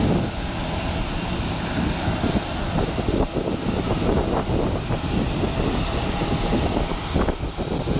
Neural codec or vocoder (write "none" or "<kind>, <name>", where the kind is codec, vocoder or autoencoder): none